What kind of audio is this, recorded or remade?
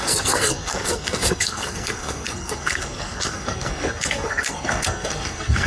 remade